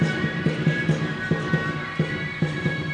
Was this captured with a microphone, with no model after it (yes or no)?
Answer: no